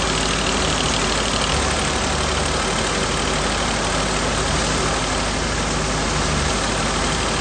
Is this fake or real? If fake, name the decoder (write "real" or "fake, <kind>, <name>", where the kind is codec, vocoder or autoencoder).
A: real